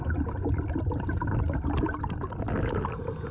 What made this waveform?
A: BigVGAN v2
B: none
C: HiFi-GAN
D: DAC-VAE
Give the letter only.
B